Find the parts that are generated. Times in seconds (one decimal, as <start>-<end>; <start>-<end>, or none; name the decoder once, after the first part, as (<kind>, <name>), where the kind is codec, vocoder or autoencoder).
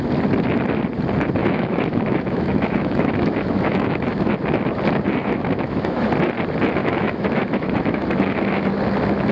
1.4-4.3 (autoencoder, DAC-VAE); 5.2-6.1; 6.8-8.7